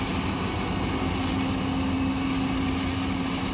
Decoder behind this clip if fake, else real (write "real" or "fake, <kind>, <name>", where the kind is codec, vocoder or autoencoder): real